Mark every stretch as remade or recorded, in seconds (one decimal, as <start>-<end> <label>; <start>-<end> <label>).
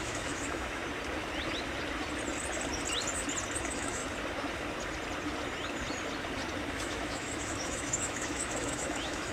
0.0-0.8 remade; 0.8-3.6 recorded; 3.6-4.0 remade; 4.0-6.7 recorded; 6.7-9.3 remade